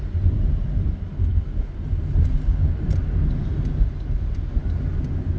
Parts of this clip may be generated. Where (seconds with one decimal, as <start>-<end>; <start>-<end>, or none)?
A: none